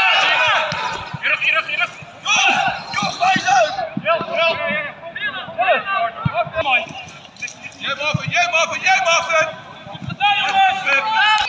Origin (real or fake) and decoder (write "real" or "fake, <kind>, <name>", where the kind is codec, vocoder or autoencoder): real